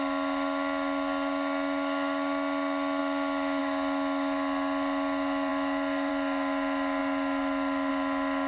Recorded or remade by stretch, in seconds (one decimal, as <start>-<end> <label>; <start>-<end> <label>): 0.0-8.5 recorded